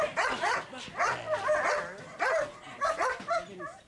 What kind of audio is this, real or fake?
real